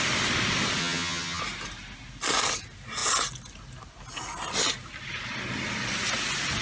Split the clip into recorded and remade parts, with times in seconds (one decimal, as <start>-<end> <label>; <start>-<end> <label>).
0.0-0.8 recorded; 0.8-1.4 remade; 1.4-6.6 recorded